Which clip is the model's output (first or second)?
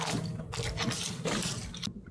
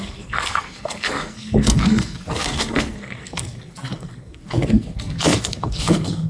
second